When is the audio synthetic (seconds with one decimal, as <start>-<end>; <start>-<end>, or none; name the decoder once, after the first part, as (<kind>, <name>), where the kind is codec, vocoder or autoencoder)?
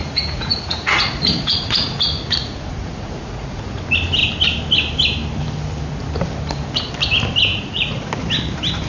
0.0-3.8 (vocoder, Vocos); 7.5-8.0